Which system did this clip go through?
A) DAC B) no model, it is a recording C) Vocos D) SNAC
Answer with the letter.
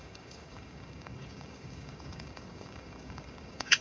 A